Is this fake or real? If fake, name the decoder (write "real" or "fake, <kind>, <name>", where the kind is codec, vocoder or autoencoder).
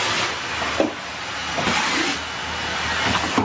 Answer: real